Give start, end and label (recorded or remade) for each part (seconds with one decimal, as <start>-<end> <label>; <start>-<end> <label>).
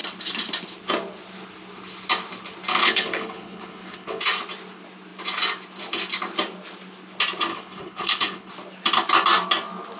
0.0-2.8 recorded; 2.8-4.2 remade; 4.2-7.5 recorded; 7.5-8.5 remade; 8.5-10.0 recorded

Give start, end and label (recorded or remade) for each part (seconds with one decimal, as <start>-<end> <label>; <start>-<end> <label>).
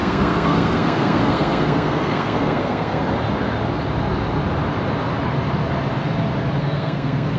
0.0-3.0 remade; 3.0-6.6 recorded; 6.6-7.4 remade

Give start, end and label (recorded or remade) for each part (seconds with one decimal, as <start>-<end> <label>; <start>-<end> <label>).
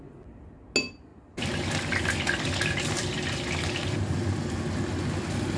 0.0-5.6 recorded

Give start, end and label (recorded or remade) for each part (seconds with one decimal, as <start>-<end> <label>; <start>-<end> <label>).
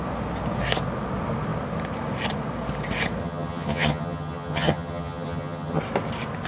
0.0-3.2 recorded; 3.2-5.8 remade; 5.8-6.5 recorded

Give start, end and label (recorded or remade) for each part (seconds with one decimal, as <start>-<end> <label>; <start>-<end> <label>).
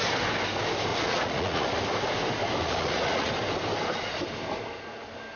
0.0-0.9 recorded; 0.9-1.7 remade; 1.7-2.6 recorded; 2.6-3.3 remade; 3.3-5.4 recorded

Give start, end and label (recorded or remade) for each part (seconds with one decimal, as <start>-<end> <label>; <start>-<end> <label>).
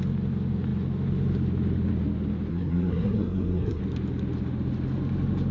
0.0-2.5 recorded; 2.5-3.8 remade; 3.8-5.5 recorded